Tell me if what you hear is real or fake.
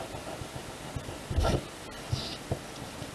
real